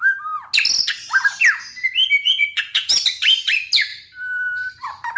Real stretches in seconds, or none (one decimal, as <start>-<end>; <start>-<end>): 0.0-2.2; 2.9-5.2